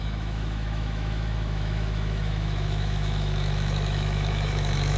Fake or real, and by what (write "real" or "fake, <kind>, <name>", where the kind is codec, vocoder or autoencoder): fake, autoencoder, DAC-VAE